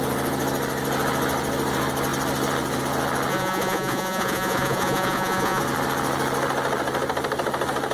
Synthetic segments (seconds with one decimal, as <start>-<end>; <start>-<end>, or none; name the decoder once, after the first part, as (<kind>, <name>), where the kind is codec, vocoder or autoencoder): 3.3-5.6 (vocoder, Vocos)